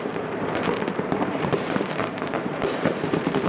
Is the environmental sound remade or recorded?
remade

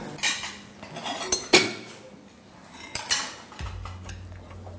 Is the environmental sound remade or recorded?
recorded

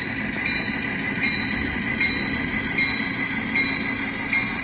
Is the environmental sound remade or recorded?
recorded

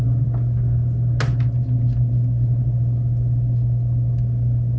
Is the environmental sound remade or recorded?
recorded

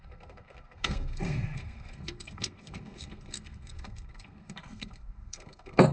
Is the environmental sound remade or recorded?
remade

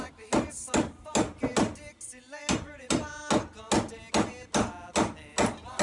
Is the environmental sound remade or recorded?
recorded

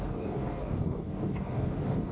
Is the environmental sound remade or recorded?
remade